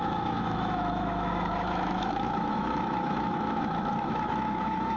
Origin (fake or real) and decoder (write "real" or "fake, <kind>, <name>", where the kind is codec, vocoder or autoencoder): fake, autoencoder, DAC-VAE